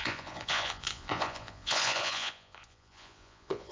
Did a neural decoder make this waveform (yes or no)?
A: yes